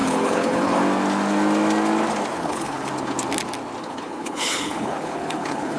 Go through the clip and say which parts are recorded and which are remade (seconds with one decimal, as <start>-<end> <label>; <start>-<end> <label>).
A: 0.0-0.8 remade; 0.8-2.3 recorded; 2.3-2.9 remade; 2.9-3.8 recorded; 3.8-5.8 remade